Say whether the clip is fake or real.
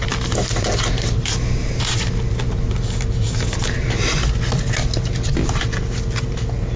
real